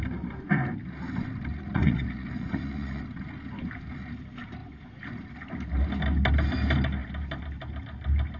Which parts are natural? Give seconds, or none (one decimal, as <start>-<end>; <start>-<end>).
0.0-1.5; 3.0-8.4